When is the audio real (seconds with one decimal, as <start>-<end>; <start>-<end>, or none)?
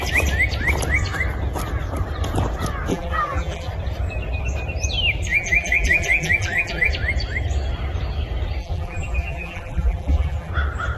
0.0-2.9; 3.7-5.3; 6.9-8.6; 10.5-11.0